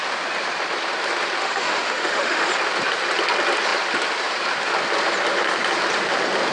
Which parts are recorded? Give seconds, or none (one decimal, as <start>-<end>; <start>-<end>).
0.0-1.4; 2.5-6.5